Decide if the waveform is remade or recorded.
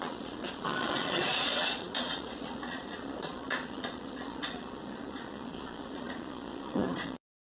remade